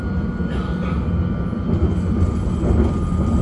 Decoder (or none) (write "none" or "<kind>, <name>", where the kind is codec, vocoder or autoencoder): none